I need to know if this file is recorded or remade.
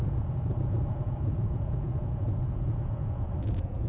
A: remade